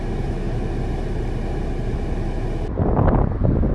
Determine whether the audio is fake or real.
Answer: real